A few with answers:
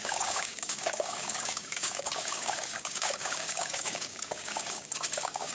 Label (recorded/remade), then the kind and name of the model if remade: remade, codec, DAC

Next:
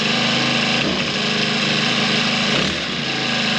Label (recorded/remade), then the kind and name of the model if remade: recorded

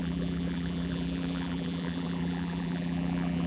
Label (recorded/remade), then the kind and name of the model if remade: remade, vocoder, BigVGAN v2